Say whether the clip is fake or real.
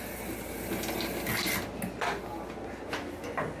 real